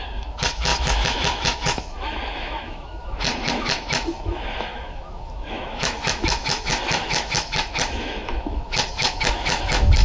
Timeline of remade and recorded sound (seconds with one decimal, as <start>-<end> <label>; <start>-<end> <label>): 0.0-10.0 remade